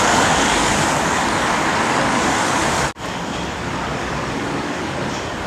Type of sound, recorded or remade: remade